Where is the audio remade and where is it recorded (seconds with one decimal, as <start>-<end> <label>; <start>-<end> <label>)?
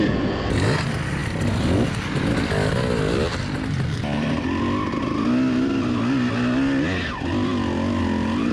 0.0-8.5 recorded